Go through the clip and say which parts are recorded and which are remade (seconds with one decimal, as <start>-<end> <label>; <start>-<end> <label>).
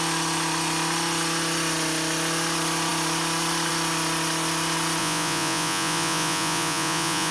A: 0.0-5.0 recorded; 5.0-7.3 remade